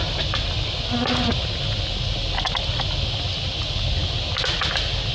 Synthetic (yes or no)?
no